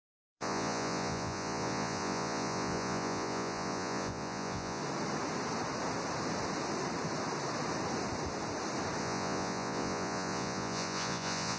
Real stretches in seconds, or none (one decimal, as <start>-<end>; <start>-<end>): 4.8-9.0